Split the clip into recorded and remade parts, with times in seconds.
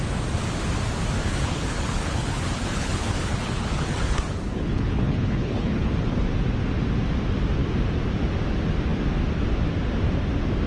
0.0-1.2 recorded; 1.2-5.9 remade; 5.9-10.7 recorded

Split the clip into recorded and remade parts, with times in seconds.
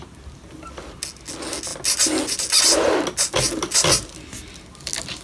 0.0-5.2 recorded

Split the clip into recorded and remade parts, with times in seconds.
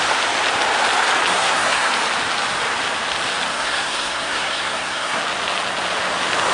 0.0-1.3 recorded; 1.3-1.9 remade; 1.9-3.5 recorded; 3.5-5.2 remade; 5.2-6.5 recorded